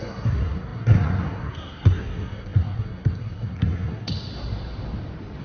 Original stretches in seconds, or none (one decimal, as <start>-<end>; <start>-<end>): 4.1-5.4